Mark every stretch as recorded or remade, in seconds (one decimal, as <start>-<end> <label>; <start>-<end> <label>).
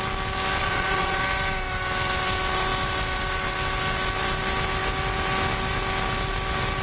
0.0-0.6 recorded; 0.6-1.2 remade; 1.2-6.8 recorded